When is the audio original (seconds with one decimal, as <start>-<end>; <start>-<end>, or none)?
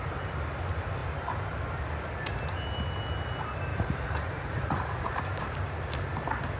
0.0-3.7; 5.2-6.6